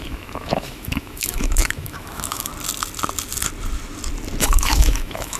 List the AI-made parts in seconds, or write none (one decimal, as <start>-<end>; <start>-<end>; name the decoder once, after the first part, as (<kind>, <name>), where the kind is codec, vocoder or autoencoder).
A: 0.0-2.5 (autoencoder, DAC-VAE); 4.4-5.4